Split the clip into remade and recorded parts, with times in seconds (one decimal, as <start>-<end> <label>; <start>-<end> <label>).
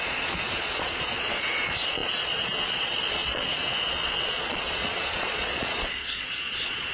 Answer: 0.0-6.9 remade